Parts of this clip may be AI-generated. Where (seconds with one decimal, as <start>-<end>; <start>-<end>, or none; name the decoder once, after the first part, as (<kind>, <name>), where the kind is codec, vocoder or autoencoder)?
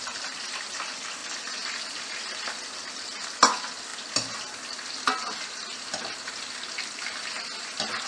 none